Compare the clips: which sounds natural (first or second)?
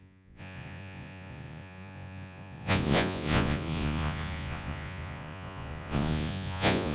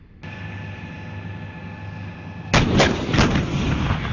second